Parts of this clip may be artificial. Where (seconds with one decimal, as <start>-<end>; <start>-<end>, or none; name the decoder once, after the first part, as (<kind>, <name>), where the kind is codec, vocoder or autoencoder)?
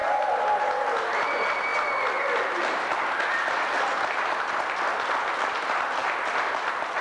none